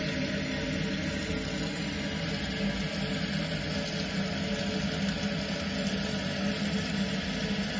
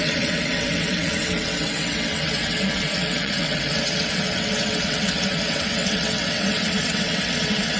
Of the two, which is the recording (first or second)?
first